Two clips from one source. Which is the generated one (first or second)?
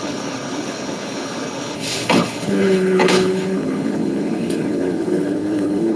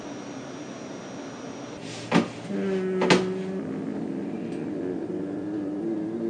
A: first